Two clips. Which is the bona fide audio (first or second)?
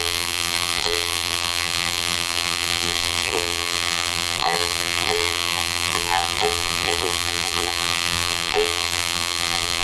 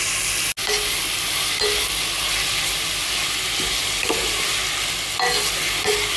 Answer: second